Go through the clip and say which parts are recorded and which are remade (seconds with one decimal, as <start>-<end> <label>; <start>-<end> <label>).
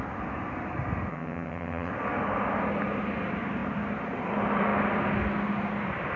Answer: 0.0-1.1 recorded; 1.1-1.9 remade; 1.9-6.2 recorded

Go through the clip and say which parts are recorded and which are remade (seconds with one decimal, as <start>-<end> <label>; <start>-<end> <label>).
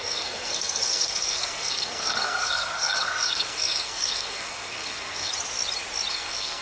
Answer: 0.0-5.3 remade; 5.3-6.1 recorded; 6.1-6.6 remade